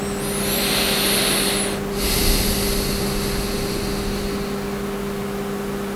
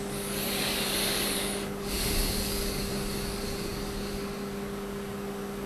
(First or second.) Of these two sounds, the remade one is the second